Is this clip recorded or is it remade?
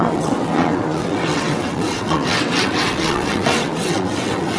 remade